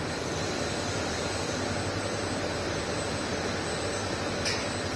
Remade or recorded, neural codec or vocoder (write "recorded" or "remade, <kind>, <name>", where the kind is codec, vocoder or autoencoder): recorded